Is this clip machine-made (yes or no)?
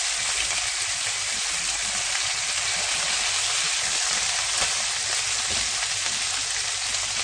no